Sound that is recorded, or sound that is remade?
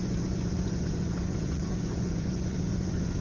remade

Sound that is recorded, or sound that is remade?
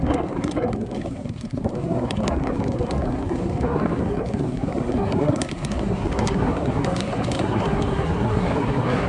remade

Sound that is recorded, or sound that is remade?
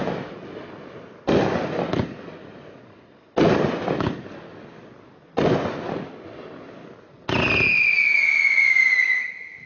recorded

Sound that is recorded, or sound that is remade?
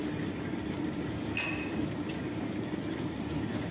recorded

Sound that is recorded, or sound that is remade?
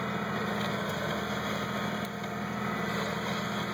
recorded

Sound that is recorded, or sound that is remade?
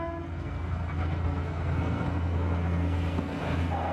remade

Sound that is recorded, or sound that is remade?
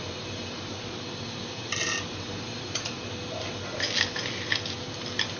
recorded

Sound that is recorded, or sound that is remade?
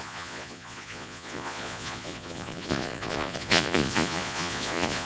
remade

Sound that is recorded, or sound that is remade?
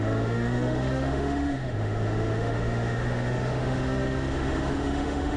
remade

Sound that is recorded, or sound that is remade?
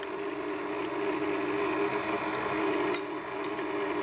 recorded